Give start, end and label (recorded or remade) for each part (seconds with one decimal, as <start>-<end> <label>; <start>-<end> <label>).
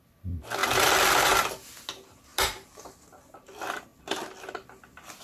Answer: 0.0-5.2 recorded